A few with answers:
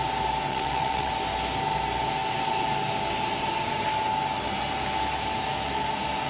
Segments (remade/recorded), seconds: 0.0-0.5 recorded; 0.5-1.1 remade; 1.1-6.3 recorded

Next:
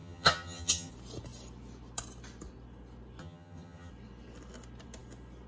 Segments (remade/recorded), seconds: 0.0-0.9 remade; 0.9-3.2 recorded; 3.2-3.9 remade; 3.9-5.5 recorded

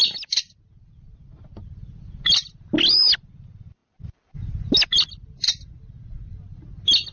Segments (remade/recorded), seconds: 0.0-7.1 recorded